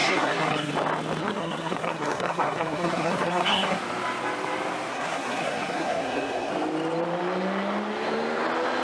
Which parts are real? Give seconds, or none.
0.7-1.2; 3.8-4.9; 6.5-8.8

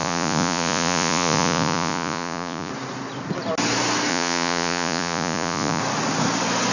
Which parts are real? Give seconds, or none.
2.7-4.1; 5.8-6.7